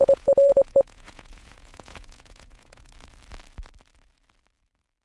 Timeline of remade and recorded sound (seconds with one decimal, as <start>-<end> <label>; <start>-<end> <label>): 0.0-2.9 remade; 2.9-5.0 recorded